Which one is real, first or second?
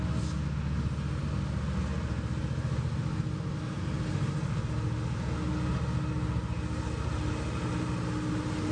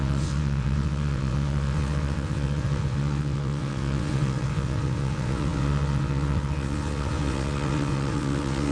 first